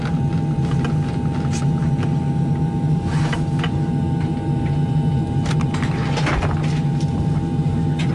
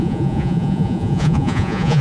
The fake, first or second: second